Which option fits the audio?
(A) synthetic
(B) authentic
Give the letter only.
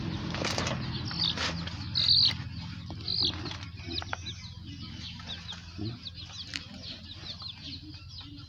B